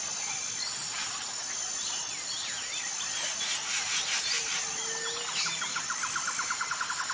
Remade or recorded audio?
recorded